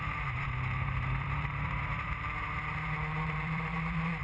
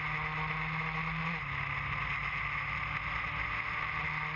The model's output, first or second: first